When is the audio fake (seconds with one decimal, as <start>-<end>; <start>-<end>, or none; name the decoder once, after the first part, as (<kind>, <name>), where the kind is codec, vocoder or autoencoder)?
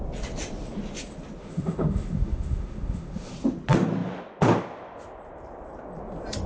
1.4-3.3 (autoencoder, DAC-VAE)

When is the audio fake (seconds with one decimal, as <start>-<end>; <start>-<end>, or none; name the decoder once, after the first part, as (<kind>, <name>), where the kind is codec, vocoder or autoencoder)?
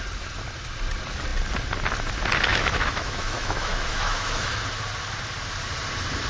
2.5-4.6 (autoencoder, DAC-VAE)